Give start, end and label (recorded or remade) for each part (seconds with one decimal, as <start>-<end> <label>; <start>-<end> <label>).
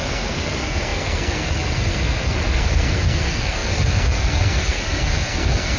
0.0-5.8 remade